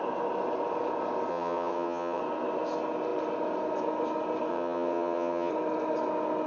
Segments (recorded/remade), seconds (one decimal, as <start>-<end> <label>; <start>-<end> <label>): 0.0-1.3 recorded; 1.3-2.2 remade; 2.2-4.5 recorded; 4.5-5.5 remade; 5.5-6.5 recorded